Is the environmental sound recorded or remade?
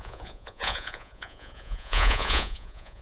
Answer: remade